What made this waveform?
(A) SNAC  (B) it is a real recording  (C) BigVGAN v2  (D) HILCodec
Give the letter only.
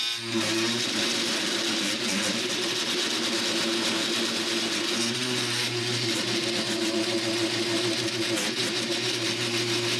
B